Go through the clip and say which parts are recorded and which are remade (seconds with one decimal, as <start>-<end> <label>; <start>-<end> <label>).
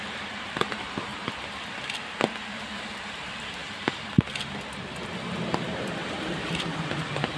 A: 0.0-1.1 remade; 1.1-2.9 recorded; 2.9-3.6 remade; 3.6-6.3 recorded; 6.3-7.4 remade